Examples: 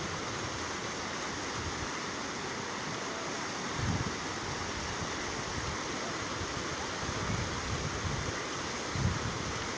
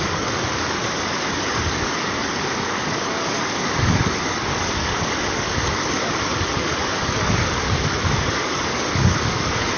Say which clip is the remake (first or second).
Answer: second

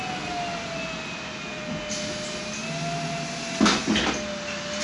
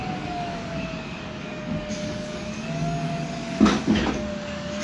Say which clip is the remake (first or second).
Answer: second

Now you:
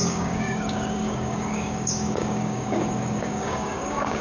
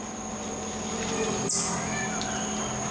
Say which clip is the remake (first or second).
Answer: first